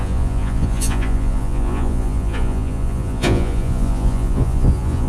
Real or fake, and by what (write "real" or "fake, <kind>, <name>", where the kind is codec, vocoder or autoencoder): fake, vocoder, Vocos